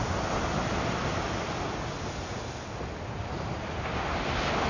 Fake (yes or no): no